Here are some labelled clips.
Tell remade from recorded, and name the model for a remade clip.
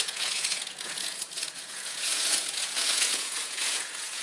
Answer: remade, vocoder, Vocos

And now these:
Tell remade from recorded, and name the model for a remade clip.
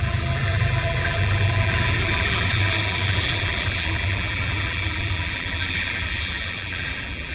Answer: remade, vocoder, BigVGAN v2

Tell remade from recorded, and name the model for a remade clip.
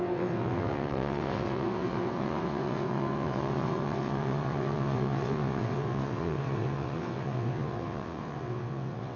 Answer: remade, vocoder, WaveNeXt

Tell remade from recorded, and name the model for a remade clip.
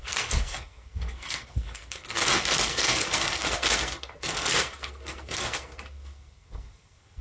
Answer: remade, codec, SNAC